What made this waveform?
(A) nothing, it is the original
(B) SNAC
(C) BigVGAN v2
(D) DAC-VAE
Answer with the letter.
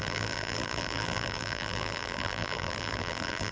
C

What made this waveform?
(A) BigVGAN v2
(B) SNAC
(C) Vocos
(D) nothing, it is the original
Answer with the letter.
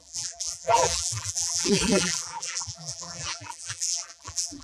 A